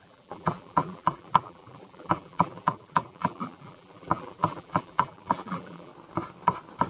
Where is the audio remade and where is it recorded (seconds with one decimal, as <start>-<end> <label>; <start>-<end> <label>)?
0.0-5.9 remade; 5.9-6.9 recorded